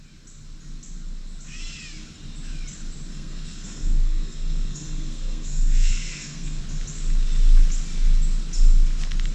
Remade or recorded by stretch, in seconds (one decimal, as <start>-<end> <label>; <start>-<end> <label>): 0.0-3.1 recorded; 3.1-6.6 remade; 6.6-9.3 recorded